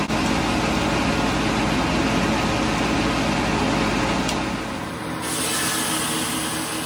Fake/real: real